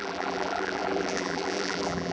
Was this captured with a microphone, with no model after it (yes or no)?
no